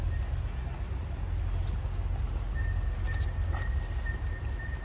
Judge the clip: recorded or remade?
recorded